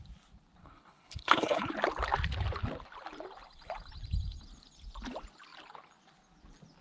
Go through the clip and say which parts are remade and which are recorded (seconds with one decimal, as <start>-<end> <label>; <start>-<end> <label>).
0.0-0.6 recorded; 0.6-1.7 remade; 1.7-6.8 recorded